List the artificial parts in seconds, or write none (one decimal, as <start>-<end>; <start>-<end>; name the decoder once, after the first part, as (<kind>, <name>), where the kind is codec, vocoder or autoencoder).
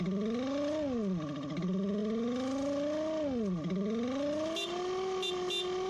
none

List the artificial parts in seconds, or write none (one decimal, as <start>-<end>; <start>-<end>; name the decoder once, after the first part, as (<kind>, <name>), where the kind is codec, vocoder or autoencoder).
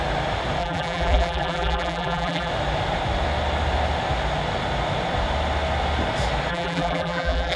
0.6-2.5 (vocoder, BigVGAN v2); 6.5-7.6